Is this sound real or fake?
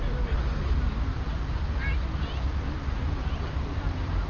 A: real